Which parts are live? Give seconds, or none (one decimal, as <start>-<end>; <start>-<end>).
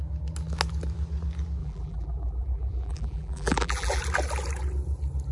0.0-1.6; 4.0-5.3